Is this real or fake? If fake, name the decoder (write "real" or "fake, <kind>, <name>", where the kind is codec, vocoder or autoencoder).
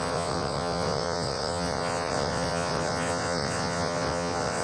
fake, vocoder, WaveNeXt